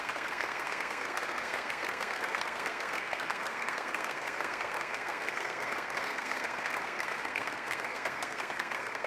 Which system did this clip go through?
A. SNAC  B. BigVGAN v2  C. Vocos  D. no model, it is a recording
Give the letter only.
A